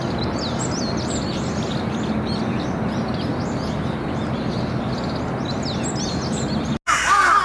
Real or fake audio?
real